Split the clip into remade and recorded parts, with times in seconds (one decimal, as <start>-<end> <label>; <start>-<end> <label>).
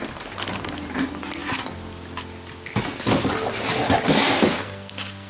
0.0-4.5 recorded; 4.5-5.3 remade